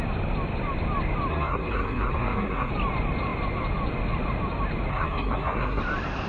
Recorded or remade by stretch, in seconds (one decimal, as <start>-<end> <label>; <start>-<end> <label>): 0.0-1.3 recorded; 1.3-2.7 remade; 2.7-4.9 recorded; 4.9-5.8 remade; 5.8-6.3 recorded

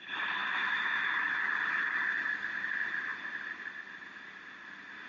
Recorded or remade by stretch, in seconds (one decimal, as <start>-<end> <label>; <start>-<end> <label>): 0.0-0.4 recorded; 0.4-1.0 remade; 1.0-5.1 recorded

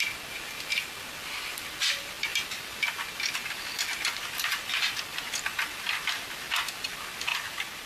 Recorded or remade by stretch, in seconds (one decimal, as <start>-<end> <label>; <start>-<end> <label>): 0.0-2.3 recorded; 2.3-6.4 remade; 6.4-7.3 recorded; 7.3-7.9 remade

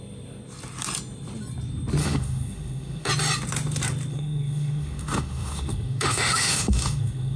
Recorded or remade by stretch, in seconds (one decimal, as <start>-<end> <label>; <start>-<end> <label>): 0.0-2.0 recorded; 2.0-3.1 remade; 3.1-4.1 recorded; 4.1-7.4 remade

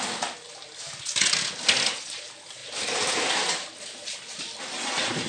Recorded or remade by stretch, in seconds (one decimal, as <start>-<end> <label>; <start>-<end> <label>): 0.0-5.3 recorded